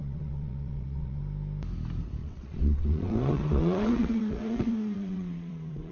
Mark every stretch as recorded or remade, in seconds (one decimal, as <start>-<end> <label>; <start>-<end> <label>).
0.0-1.2 remade; 1.2-2.2 recorded; 2.2-5.9 remade